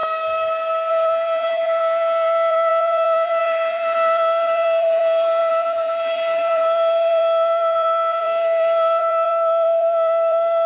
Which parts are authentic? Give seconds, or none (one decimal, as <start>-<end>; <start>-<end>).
0.0-0.9